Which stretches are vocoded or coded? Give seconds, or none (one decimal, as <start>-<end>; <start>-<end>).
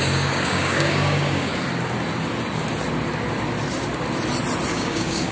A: 0.0-1.5; 4.7-5.3